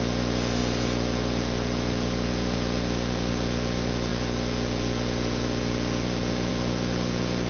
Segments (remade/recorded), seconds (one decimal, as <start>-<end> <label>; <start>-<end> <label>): 0.0-7.5 remade